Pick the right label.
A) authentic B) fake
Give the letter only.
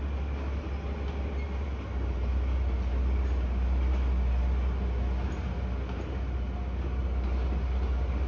A